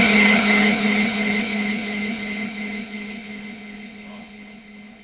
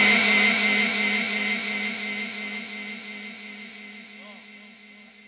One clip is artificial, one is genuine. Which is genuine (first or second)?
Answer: second